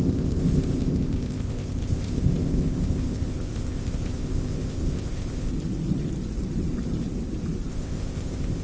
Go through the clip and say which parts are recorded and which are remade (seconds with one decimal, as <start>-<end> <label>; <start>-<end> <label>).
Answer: 0.0-5.5 remade; 5.5-7.7 recorded; 7.7-8.6 remade